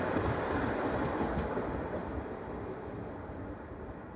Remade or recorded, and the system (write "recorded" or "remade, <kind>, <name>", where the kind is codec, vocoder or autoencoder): recorded